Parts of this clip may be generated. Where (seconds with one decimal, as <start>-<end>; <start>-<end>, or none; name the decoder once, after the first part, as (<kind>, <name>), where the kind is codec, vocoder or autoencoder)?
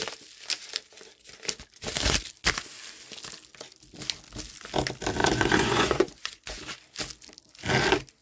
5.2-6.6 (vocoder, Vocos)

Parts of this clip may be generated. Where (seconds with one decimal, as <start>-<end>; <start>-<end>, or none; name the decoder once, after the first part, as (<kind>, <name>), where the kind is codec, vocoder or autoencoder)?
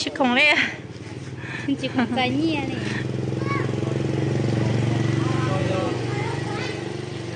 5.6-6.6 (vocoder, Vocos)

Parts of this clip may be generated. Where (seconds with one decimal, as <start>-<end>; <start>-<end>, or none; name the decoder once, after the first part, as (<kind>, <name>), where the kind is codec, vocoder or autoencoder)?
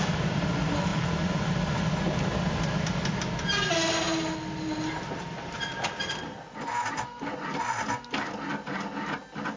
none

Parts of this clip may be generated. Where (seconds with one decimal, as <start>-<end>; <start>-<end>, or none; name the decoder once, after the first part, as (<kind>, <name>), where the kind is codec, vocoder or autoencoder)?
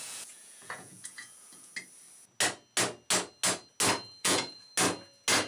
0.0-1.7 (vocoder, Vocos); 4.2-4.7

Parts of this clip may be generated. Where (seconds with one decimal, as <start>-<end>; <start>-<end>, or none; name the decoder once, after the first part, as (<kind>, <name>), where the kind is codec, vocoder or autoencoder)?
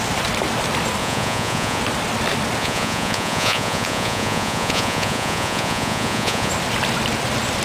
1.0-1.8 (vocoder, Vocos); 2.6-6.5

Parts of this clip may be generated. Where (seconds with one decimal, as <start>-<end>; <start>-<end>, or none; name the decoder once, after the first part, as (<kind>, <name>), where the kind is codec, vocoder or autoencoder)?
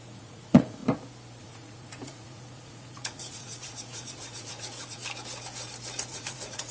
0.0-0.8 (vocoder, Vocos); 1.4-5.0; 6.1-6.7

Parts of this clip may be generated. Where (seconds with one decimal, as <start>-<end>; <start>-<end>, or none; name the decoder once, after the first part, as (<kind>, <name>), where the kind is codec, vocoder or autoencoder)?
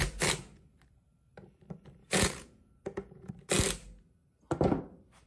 2.0-3.3 (vocoder, Vocos)